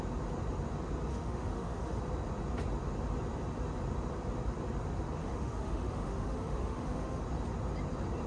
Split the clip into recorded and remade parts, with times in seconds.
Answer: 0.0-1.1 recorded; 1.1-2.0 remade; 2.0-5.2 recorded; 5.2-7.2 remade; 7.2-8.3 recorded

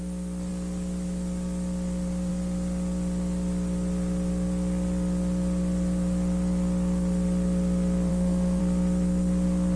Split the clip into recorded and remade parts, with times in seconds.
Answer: 0.0-8.1 recorded; 8.1-8.6 remade; 8.6-9.8 recorded

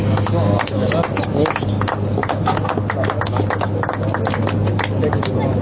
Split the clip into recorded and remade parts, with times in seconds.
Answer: 0.0-5.6 recorded

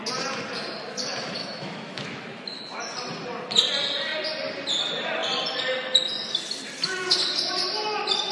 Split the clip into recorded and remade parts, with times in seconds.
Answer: 0.0-1.4 recorded; 1.4-2.8 remade; 2.8-8.3 recorded

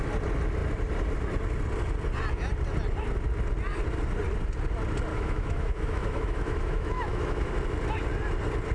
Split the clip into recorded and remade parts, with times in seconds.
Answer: 0.0-5.1 recorded; 5.1-7.5 remade; 7.5-8.7 recorded

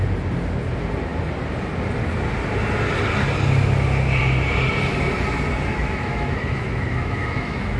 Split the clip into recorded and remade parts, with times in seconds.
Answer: 0.0-5.7 recorded; 5.7-7.8 remade

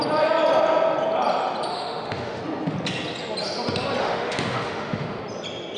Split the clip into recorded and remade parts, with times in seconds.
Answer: 0.0-1.7 recorded; 1.7-2.4 remade; 2.4-4.0 recorded; 4.0-5.2 remade; 5.2-5.8 recorded